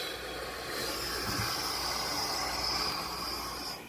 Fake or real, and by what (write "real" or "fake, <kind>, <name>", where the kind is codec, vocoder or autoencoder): real